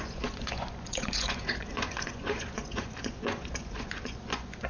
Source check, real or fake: fake